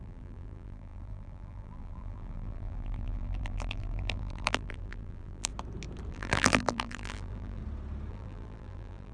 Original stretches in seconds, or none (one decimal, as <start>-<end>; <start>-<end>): 5.5-6.1; 7.6-8.1